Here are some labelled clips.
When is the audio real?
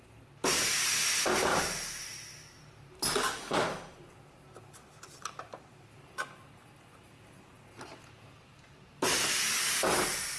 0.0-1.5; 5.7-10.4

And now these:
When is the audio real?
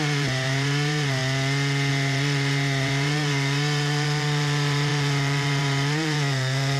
1.2-1.9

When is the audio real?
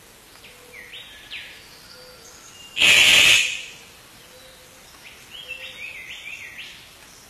0.0-3.1; 3.7-7.3